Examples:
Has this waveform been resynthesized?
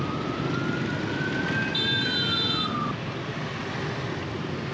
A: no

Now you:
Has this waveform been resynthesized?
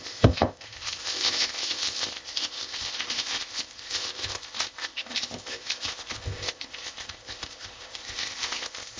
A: yes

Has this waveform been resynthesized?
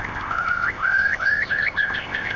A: yes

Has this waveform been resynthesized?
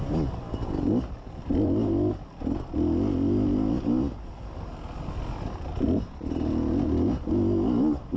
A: no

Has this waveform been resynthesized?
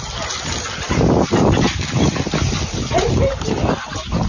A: no